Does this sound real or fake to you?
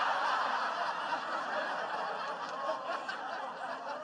real